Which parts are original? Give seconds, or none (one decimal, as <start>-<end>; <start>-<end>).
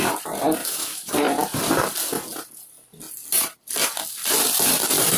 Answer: 0.0-0.6; 1.1-5.2